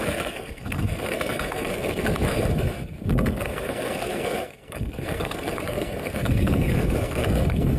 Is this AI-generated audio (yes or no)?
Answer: yes